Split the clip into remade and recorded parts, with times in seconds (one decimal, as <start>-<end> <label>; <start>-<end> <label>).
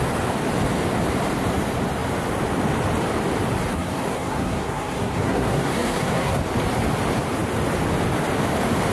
0.0-3.7 recorded; 3.7-6.4 remade; 6.4-8.9 recorded